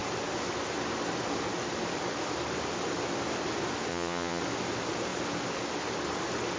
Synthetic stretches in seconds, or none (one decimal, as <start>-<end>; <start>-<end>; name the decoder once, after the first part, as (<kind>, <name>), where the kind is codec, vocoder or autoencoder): 3.9-4.4 (vocoder, Vocos)